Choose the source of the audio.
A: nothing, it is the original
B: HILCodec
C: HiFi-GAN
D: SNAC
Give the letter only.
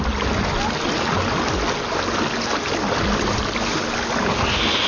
A